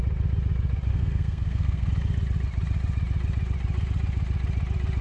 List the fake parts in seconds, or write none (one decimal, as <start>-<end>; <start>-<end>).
0.9-1.9